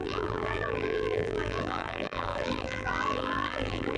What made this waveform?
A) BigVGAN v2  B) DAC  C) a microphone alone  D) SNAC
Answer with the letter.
A